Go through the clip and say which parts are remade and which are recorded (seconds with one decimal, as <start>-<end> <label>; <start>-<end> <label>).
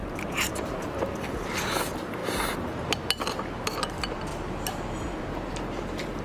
0.0-1.4 remade; 1.4-2.2 recorded; 2.2-3.0 remade; 3.0-6.2 recorded